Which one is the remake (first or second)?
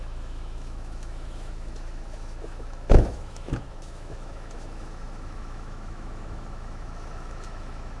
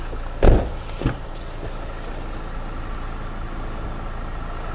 first